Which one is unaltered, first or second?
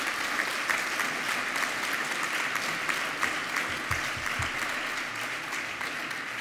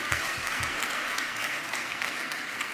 first